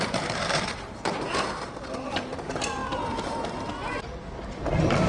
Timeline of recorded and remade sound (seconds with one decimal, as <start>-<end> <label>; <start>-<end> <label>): 0.0-1.1 remade; 1.1-2.1 recorded; 2.1-3.9 remade; 3.9-5.1 recorded